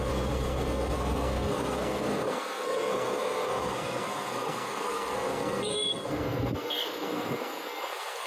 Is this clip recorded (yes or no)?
no